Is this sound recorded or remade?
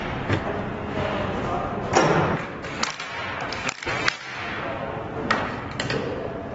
recorded